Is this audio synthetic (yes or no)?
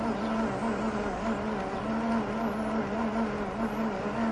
no